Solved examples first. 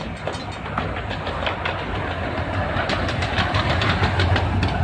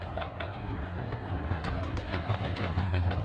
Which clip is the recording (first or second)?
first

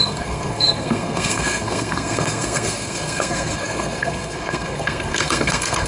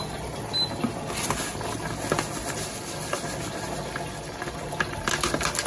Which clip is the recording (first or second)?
second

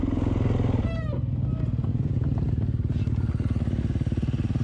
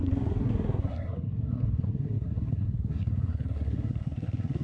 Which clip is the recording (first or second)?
first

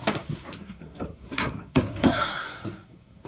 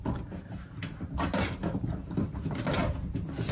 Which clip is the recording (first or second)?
second